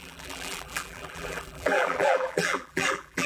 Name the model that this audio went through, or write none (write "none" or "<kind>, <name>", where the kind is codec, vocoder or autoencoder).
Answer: vocoder, BigVGAN v2